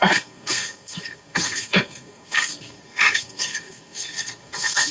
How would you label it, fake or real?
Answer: fake